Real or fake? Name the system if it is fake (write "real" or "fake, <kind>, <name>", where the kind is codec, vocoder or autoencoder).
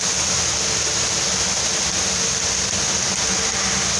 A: real